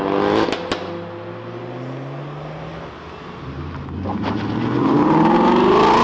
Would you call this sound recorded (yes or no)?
yes